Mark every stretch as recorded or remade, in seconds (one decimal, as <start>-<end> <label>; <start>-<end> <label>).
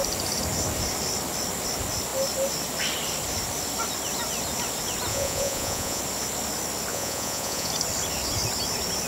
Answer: 0.0-5.1 recorded; 5.1-6.0 remade; 6.0-6.9 recorded; 6.9-7.7 remade; 7.7-9.1 recorded